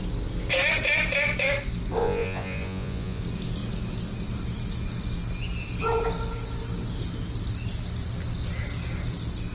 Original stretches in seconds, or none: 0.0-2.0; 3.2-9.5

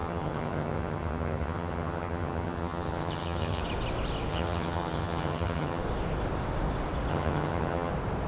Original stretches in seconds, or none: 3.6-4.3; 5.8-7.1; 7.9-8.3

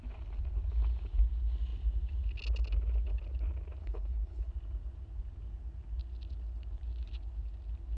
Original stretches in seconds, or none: 0.0-3.8; 4.5-8.0

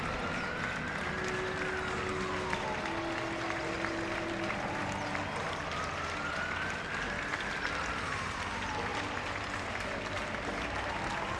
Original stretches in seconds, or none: 0.0-11.4